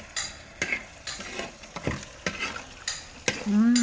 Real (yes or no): yes